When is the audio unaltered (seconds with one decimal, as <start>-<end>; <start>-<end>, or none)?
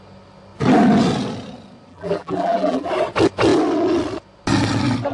0.0-1.9; 2.9-5.1